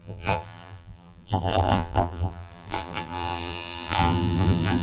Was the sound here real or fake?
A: fake